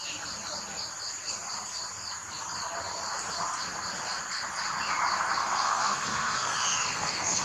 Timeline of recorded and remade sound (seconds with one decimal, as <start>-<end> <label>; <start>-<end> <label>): 0.0-5.4 recorded; 5.4-7.4 remade